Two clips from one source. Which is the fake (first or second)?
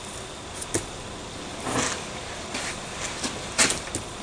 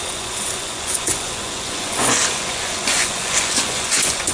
second